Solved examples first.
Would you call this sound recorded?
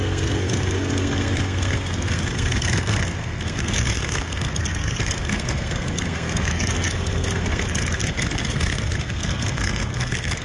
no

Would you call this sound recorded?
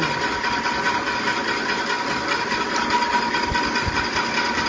yes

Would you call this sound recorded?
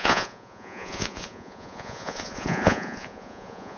no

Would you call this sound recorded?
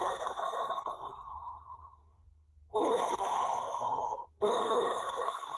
no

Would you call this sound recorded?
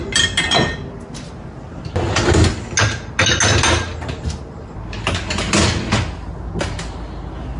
yes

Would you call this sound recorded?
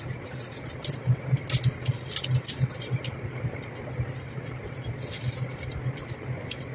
yes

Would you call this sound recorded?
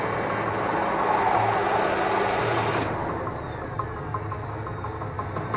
yes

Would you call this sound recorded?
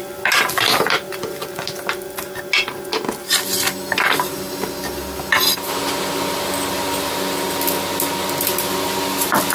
yes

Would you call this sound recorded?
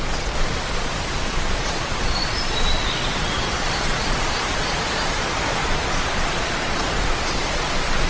no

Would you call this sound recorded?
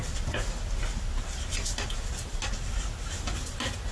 yes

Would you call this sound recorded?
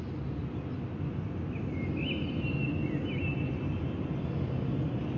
yes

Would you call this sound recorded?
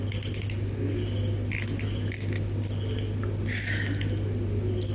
yes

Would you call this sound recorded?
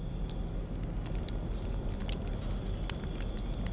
yes